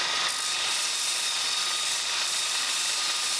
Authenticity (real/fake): real